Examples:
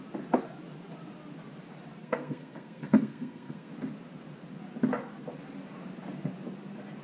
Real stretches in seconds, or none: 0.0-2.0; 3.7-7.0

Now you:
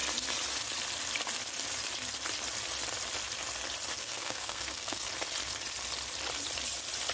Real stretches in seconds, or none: 0.0-4.0; 5.1-7.1

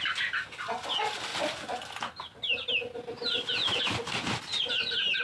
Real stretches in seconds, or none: 0.0-5.2

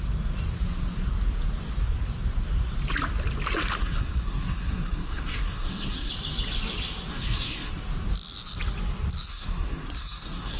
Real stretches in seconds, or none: 0.0-3.8; 6.1-7.1; 7.7-9.3

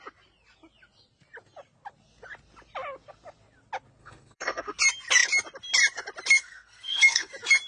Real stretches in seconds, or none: 0.0-4.0; 4.8-6.4; 7.3-7.7